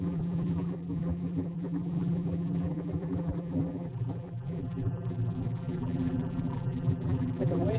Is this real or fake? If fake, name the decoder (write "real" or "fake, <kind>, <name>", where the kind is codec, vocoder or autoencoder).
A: fake, vocoder, BigVGAN v2